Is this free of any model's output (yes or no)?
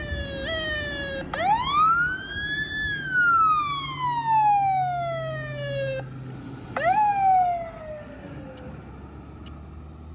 yes